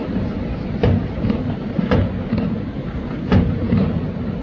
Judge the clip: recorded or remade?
remade